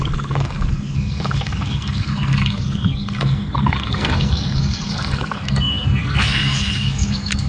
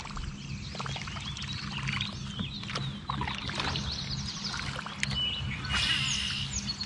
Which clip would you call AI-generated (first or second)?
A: first